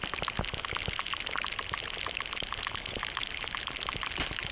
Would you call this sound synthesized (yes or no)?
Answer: no